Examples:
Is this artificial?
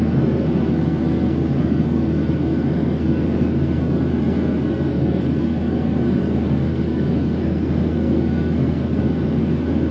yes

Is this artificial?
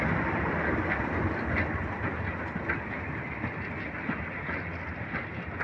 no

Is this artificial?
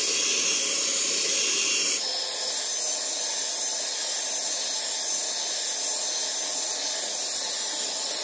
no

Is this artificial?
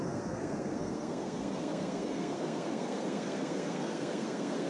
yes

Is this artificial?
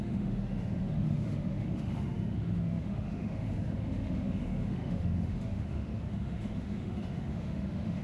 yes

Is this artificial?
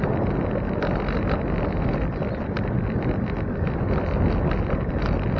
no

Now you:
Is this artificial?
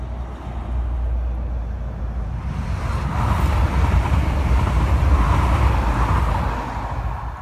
no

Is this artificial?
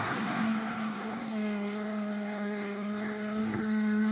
yes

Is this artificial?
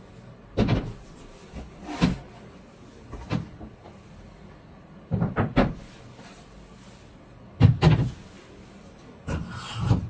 no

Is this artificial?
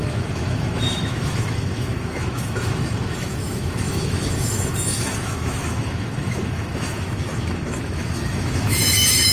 yes